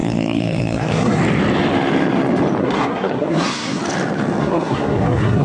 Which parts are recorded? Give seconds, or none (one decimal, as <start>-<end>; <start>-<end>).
1.2-2.6; 3.8-4.4